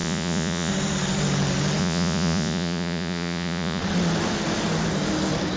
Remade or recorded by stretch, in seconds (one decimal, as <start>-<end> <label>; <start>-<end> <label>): 0.0-0.7 remade; 0.7-1.8 recorded; 1.8-3.8 remade; 3.8-5.6 recorded